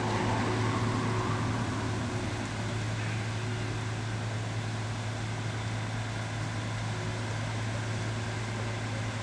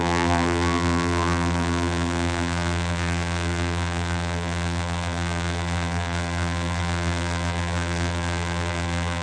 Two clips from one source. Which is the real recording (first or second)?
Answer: first